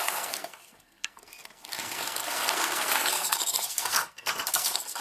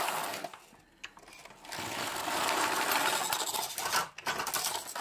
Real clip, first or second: second